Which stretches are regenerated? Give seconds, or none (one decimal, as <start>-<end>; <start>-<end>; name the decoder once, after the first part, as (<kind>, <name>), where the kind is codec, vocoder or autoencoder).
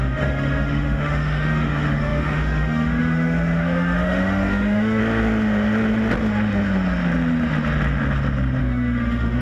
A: 0.0-5.0 (autoencoder, DAC-VAE); 8.6-9.4